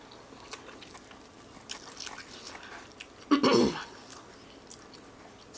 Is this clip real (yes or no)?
yes